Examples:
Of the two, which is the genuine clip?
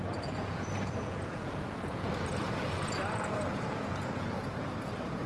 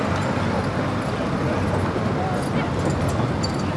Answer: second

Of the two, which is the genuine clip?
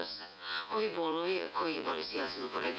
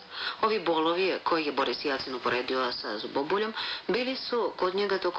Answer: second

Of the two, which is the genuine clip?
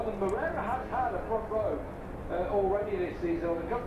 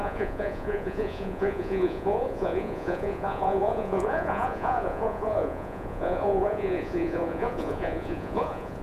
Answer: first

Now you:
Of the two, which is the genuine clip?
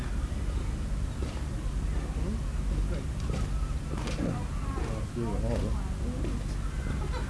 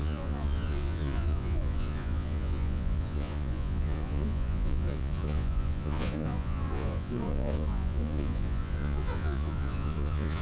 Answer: first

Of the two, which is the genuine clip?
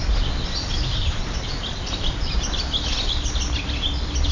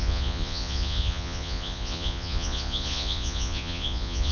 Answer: first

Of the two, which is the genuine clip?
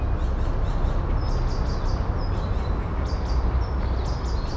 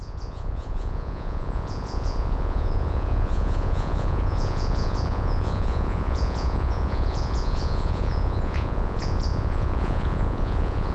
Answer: first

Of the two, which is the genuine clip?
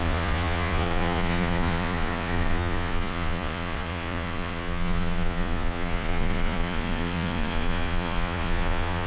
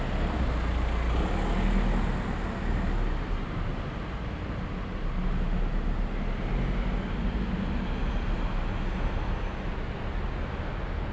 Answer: second